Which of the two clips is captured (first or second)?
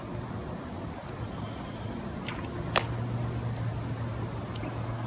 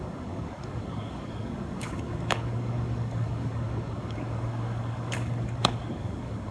first